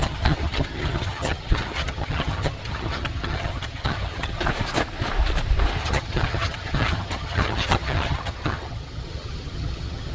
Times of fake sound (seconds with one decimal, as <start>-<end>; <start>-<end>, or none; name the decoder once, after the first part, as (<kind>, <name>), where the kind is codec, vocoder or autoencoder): 0.0-4.4 (vocoder, HiFi-GAN); 5.8-10.1